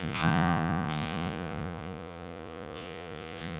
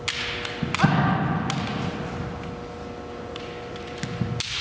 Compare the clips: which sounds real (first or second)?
second